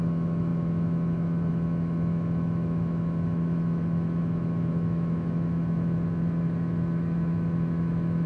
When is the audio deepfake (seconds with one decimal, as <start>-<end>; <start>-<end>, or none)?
0.0-8.3